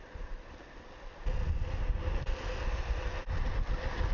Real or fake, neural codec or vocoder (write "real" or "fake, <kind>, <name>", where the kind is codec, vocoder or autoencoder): real